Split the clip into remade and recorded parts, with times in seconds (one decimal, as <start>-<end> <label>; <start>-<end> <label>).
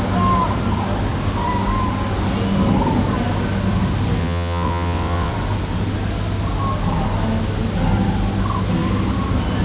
0.0-4.2 recorded; 4.2-5.3 remade; 5.3-9.6 recorded